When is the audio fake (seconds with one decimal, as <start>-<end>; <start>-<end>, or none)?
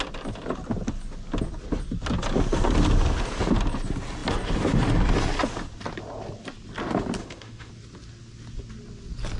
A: 7.2-7.7